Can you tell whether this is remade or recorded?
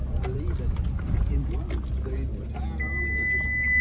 recorded